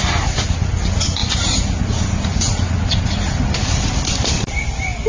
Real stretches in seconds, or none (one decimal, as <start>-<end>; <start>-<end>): 0.0-5.1